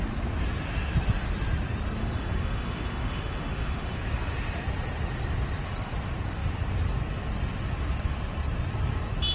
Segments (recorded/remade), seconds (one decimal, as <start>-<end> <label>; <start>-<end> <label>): 0.0-2.0 recorded; 2.0-4.0 remade; 4.0-9.3 recorded